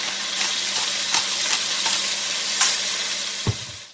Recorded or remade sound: remade